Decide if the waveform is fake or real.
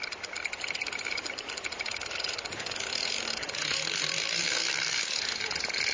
real